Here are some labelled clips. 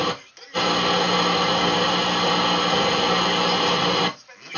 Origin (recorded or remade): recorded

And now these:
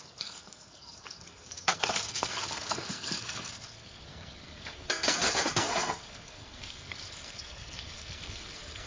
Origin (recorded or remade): remade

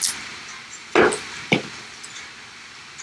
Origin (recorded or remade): recorded